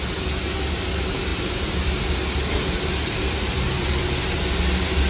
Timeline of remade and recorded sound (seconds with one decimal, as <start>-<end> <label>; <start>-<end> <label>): 0.0-5.1 recorded